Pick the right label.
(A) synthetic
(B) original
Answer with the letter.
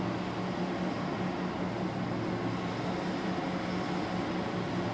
B